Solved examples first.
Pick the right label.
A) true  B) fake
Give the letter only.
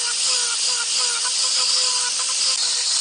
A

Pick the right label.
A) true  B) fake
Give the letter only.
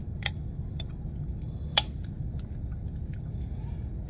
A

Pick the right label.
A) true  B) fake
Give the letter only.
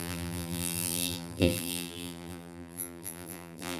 B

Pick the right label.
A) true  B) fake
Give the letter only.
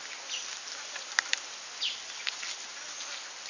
A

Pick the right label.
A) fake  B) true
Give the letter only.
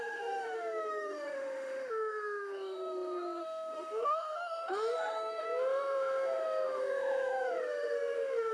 A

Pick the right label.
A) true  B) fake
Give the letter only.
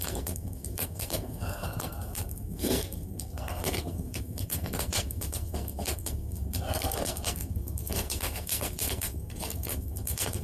B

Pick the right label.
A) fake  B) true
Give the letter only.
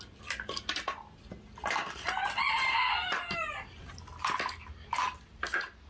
B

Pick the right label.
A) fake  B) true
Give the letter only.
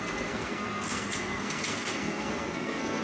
A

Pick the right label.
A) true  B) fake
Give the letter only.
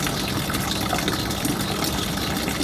A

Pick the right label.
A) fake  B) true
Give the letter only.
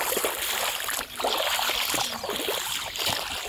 B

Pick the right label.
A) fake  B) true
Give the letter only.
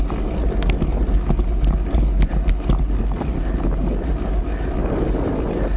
B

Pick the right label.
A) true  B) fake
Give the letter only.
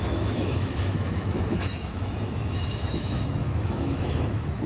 B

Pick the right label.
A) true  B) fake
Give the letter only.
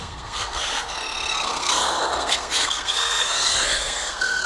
B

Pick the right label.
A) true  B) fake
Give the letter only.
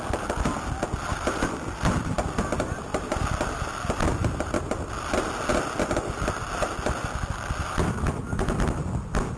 A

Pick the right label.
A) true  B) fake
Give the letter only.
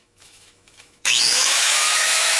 B